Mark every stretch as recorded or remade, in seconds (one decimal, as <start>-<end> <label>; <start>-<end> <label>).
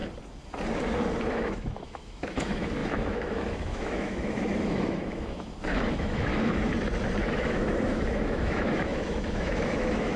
0.0-1.3 recorded; 1.3-6.7 remade; 6.7-7.3 recorded; 7.3-10.2 remade